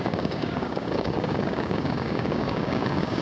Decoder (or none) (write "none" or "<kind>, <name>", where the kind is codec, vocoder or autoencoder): codec, DAC